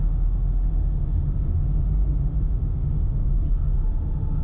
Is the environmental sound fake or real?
fake